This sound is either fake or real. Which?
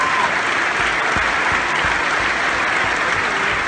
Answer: real